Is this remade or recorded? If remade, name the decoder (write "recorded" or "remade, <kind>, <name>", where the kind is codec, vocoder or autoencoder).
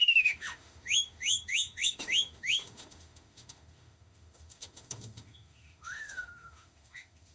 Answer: remade, autoencoder, DAC-VAE